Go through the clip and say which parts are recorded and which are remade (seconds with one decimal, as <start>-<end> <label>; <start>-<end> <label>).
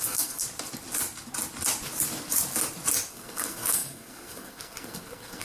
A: 0.0-0.4 remade; 0.4-3.1 recorded; 3.1-5.4 remade